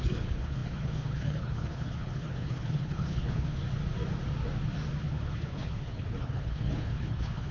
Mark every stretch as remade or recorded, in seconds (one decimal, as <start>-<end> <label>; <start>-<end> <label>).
0.0-3.6 remade; 3.6-5.1 recorded; 5.1-7.5 remade